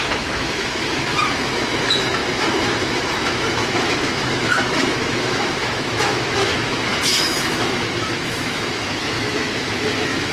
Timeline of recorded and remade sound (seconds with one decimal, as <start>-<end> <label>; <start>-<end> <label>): 0.0-10.3 remade